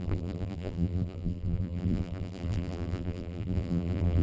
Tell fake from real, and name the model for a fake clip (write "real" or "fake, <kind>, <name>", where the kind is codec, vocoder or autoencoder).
fake, vocoder, BigVGAN v2